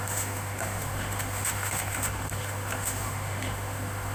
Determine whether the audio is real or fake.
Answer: fake